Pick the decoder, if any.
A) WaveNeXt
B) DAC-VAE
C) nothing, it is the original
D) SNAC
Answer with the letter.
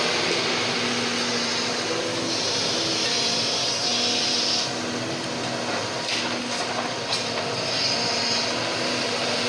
C